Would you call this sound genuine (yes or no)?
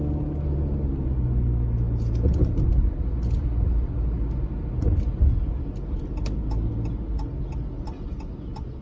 yes